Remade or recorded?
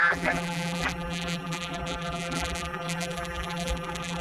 remade